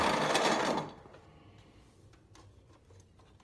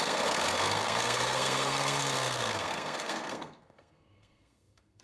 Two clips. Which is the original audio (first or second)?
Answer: first